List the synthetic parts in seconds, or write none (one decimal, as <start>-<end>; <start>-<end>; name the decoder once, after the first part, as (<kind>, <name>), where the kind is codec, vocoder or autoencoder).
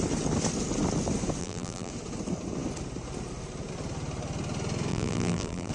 1.4-1.9 (vocoder, BigVGAN v2); 4.9-5.7